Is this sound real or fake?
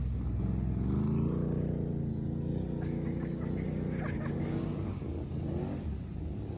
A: real